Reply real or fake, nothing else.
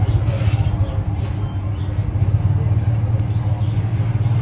real